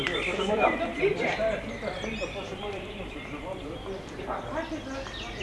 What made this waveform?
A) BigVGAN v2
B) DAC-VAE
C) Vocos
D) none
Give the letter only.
A